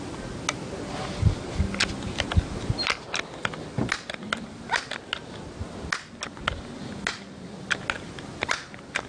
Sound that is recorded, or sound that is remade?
recorded